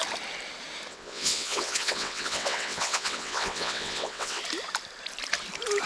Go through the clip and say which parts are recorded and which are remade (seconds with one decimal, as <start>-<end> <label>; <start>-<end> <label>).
0.0-0.9 recorded; 0.9-4.4 remade; 4.4-5.9 recorded